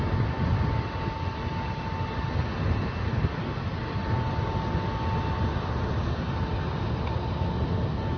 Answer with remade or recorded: recorded